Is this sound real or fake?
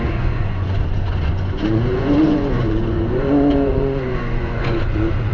fake